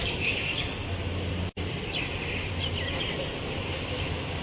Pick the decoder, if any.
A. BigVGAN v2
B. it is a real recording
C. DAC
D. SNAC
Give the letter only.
A